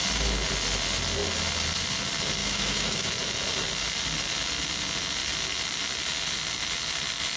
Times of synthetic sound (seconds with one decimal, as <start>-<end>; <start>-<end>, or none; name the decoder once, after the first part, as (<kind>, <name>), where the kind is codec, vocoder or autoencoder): 2.4-3.1 (autoencoder, DAC-VAE)